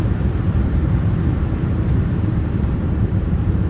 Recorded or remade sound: remade